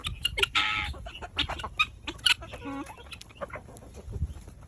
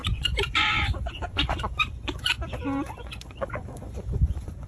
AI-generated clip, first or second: second